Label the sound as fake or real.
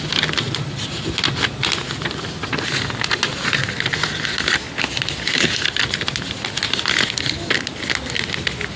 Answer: real